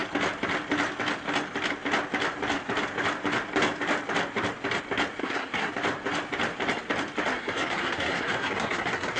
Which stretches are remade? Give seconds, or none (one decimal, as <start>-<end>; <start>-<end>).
5.2-5.7; 7.3-9.2